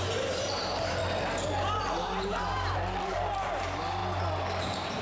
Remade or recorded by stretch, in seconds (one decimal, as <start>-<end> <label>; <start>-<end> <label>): 0.0-1.0 remade; 1.0-1.8 recorded; 1.8-4.0 remade; 4.0-4.6 recorded; 4.6-5.0 remade